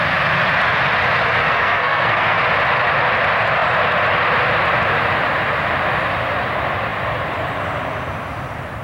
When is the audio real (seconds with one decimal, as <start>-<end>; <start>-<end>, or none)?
0.0-1.4; 2.4-8.8